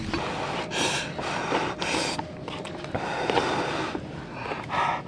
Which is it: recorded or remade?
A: recorded